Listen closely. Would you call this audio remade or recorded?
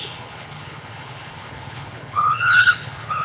remade